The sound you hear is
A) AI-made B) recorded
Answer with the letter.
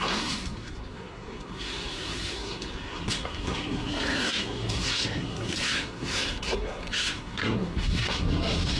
A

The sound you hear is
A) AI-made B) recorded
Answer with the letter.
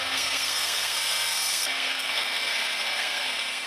A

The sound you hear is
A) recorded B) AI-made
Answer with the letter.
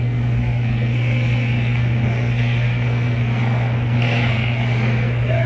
B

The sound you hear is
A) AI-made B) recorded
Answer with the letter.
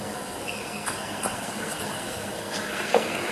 A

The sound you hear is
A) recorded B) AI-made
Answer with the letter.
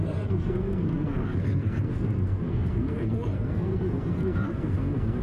B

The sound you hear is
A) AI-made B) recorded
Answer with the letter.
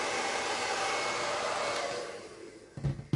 B